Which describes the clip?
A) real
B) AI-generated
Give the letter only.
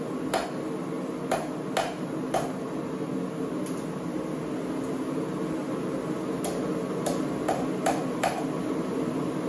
A